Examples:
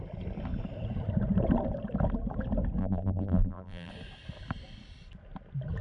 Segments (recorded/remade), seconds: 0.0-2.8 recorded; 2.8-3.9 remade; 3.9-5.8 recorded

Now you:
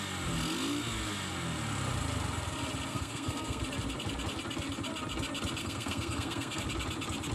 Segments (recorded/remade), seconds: 0.0-2.9 recorded; 2.9-3.6 remade; 3.6-5.6 recorded; 5.6-6.6 remade; 6.6-7.3 recorded

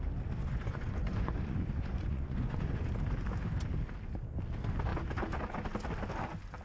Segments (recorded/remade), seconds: 0.0-0.4 recorded; 0.4-2.9 remade; 2.9-6.6 recorded

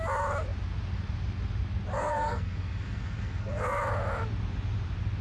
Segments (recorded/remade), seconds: 0.0-2.0 recorded; 2.0-3.8 remade; 3.8-5.2 recorded

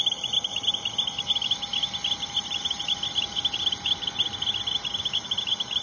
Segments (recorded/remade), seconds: 0.0-5.8 recorded

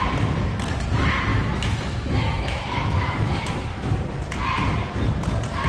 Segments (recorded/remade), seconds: 0.0-1.3 recorded; 1.3-3.9 remade; 3.9-5.7 recorded